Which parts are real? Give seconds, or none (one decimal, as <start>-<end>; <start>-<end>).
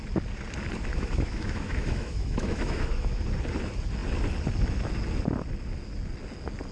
0.0-0.9; 3.2-6.7